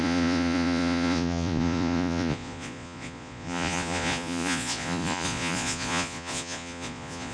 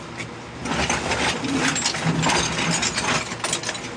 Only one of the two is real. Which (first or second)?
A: second